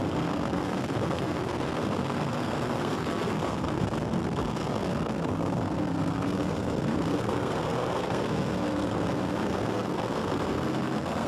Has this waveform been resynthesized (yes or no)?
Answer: yes